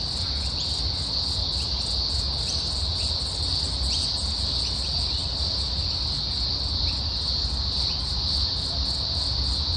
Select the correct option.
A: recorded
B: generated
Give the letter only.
A